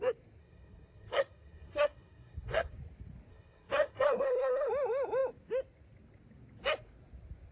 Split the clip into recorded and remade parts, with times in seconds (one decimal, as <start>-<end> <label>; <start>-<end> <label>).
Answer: 0.0-0.4 recorded; 0.4-2.7 remade; 2.7-3.3 recorded; 3.3-4.7 remade; 4.7-7.5 recorded